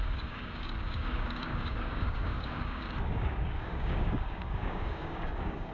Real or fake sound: fake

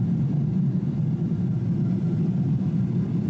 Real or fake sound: fake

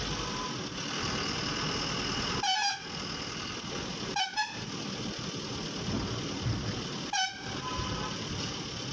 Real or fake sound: real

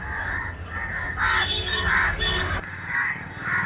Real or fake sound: fake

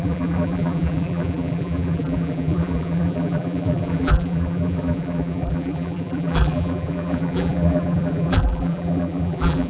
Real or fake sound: fake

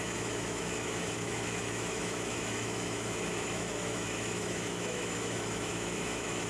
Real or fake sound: fake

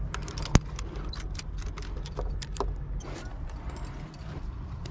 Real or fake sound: real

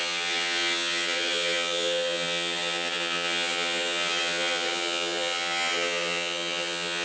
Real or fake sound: fake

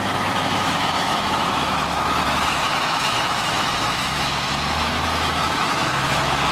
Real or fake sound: fake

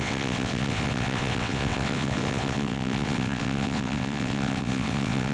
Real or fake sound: fake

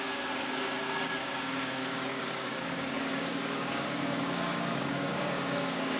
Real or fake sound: fake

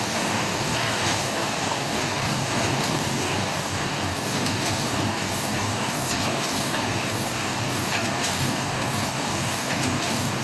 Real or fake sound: fake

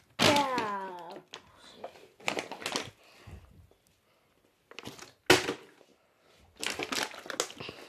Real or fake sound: real